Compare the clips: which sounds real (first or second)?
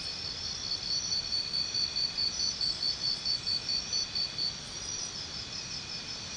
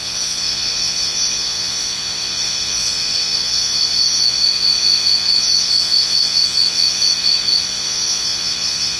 first